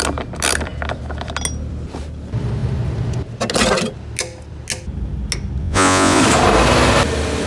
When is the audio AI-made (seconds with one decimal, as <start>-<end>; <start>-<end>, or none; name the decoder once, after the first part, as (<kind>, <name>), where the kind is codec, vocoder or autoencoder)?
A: 5.6-6.2 (vocoder, Vocos)